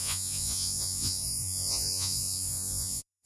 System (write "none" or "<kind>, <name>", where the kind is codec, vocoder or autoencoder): vocoder, Vocos